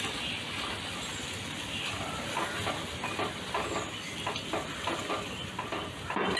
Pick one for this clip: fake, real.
real